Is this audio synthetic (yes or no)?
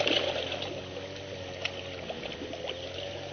no